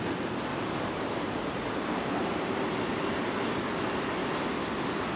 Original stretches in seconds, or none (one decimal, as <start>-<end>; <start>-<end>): 0.0-0.5; 3.6-5.2